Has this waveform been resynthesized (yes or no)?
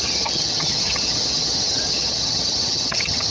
yes